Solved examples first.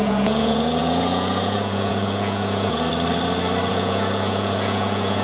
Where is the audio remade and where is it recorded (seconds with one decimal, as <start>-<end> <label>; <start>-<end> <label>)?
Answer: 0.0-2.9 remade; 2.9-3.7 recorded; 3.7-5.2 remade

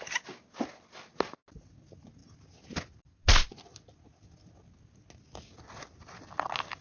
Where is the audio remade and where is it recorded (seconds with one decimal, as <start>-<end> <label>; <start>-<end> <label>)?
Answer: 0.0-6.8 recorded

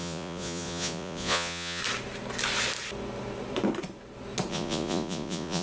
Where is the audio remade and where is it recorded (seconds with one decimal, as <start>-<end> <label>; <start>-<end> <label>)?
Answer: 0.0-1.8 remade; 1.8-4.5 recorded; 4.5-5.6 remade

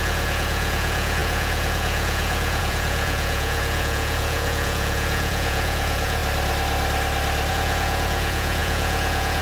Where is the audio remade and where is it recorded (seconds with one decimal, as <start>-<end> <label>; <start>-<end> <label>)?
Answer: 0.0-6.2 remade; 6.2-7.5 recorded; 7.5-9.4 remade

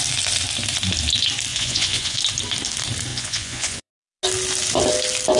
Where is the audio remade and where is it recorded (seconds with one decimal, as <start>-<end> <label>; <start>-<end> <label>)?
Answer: 0.0-1.5 recorded; 1.5-2.2 remade; 2.2-3.1 recorded; 3.1-3.9 remade; 3.9-5.4 recorded

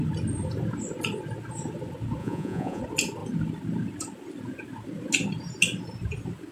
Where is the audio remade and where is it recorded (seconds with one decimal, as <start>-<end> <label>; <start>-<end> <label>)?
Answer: 0.0-2.2 recorded; 2.2-2.8 remade; 2.8-6.5 recorded

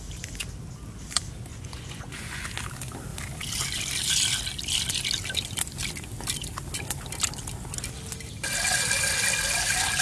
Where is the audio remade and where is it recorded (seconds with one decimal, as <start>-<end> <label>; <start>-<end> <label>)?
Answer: 0.0-1.5 recorded; 1.5-2.4 remade; 2.4-10.0 recorded

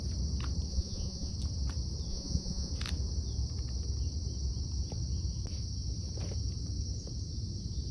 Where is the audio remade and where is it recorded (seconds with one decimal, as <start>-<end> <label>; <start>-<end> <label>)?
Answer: 0.0-0.7 recorded; 0.7-1.3 remade; 1.3-2.1 recorded; 2.1-2.7 remade; 2.7-7.9 recorded